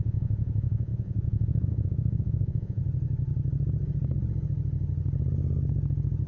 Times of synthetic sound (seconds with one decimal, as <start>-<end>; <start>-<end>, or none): 0.0-2.8